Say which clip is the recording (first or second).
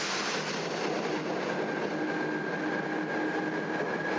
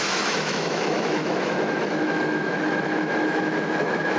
first